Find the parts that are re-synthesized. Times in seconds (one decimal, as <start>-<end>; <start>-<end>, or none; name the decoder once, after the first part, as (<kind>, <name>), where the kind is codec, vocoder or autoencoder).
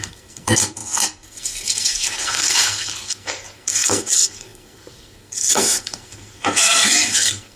0.0-7.6 (codec, SNAC)